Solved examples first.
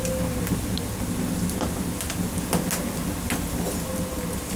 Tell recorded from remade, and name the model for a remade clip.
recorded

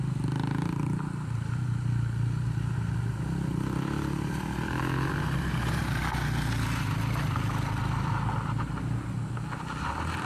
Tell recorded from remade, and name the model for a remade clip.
recorded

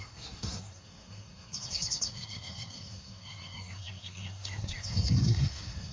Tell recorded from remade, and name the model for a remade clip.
remade, codec, SNAC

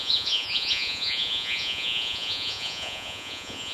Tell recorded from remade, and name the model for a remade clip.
remade, vocoder, Vocos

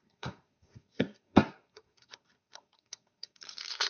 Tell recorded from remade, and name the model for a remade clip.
remade, codec, SNAC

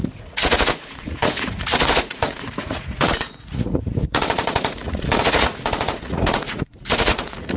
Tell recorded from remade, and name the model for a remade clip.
remade, vocoder, Vocos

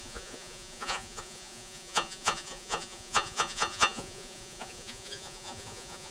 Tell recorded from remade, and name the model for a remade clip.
remade, vocoder, Vocos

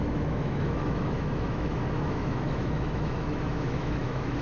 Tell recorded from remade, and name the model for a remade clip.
remade, autoencoder, DAC-VAE